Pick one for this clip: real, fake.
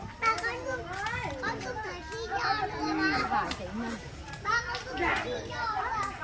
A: real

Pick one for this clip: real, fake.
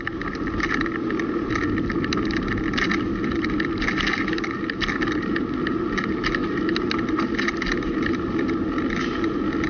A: real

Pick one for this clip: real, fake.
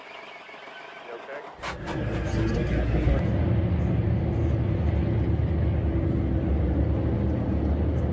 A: real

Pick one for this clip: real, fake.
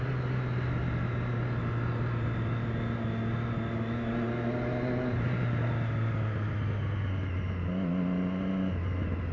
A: real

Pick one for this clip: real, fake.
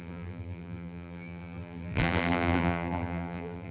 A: fake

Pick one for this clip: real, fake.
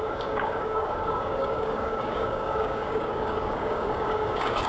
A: fake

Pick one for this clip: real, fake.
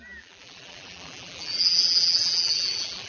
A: fake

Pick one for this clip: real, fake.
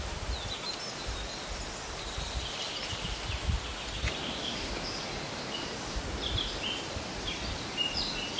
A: real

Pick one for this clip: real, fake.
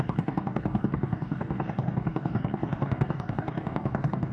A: fake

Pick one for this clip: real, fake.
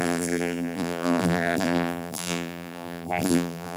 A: fake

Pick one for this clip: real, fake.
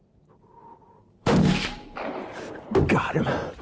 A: fake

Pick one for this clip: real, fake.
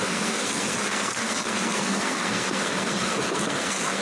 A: fake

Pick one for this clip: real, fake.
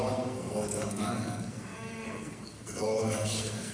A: fake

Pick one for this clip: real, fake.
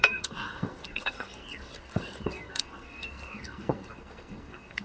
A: fake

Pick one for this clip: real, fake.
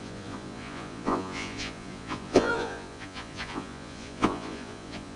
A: fake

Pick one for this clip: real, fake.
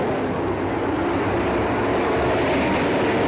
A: real